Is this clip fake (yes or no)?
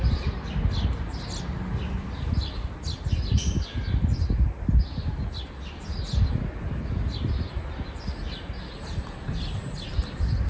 no